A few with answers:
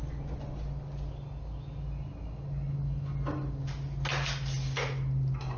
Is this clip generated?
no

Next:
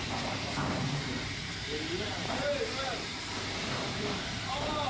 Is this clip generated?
yes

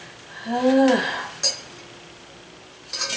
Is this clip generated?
no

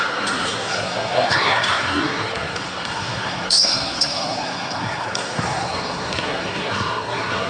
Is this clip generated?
yes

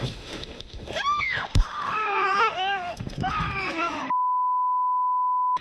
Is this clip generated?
yes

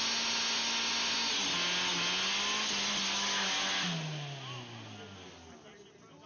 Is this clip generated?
no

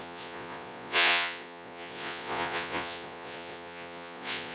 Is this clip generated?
yes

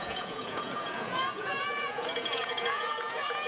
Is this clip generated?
yes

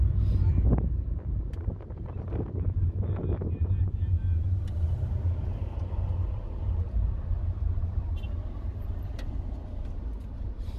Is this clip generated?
no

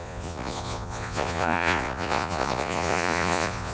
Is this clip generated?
yes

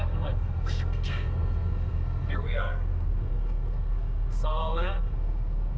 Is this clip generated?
yes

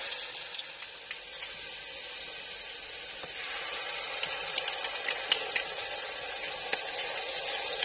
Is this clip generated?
no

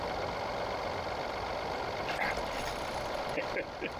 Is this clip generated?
no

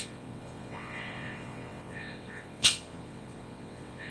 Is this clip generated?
yes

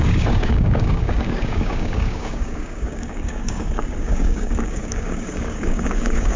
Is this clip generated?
yes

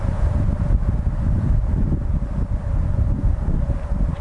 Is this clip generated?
yes